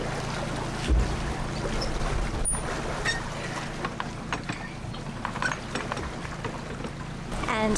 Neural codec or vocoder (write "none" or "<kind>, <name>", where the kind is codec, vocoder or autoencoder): none